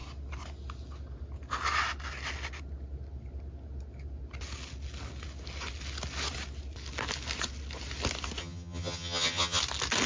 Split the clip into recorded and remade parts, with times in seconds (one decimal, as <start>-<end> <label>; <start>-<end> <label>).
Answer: 0.0-8.4 recorded; 8.4-9.6 remade; 9.6-10.1 recorded